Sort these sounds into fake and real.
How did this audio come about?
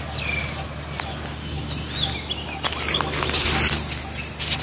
real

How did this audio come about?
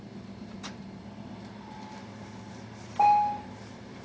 fake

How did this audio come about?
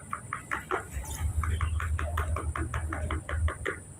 real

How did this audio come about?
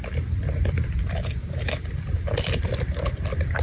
real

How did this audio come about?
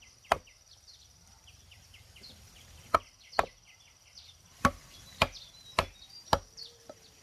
real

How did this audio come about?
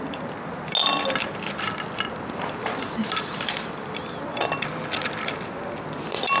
real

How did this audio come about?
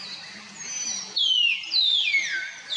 real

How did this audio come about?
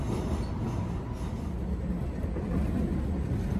real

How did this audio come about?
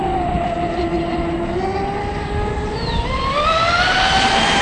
real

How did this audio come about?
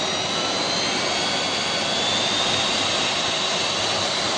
real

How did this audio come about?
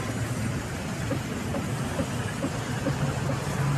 real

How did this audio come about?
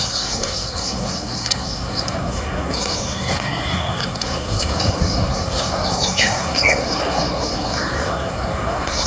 fake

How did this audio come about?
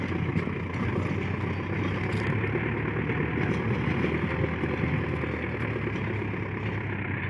real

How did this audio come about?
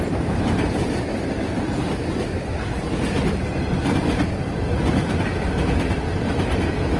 real